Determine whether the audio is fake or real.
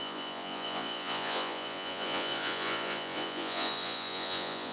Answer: fake